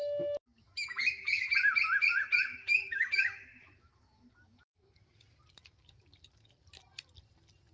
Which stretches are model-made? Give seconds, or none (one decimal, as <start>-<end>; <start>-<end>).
0.0-1.5; 2.5-5.1